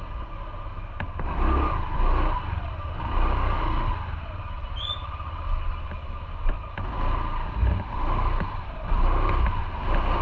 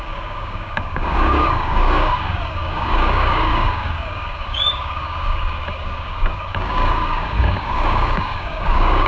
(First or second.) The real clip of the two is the first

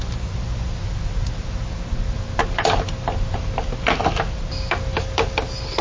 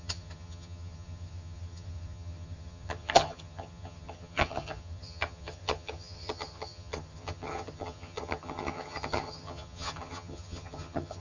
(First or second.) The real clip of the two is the first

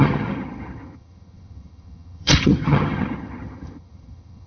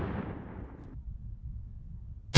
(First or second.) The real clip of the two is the second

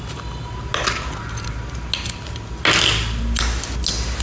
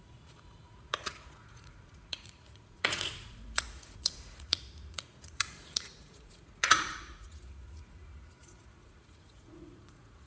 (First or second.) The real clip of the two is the first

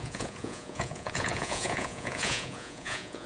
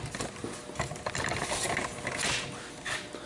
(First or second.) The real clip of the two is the second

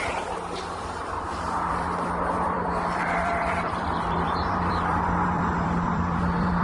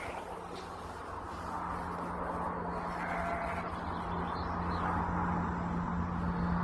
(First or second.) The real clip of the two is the second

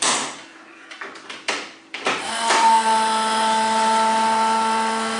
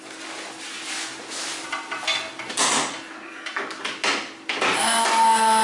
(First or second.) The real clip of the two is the second